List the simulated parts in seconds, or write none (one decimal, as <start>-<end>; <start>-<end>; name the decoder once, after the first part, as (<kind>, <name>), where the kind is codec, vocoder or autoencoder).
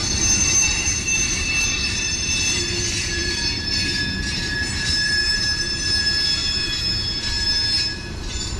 0.0-8.6 (vocoder, BigVGAN v2)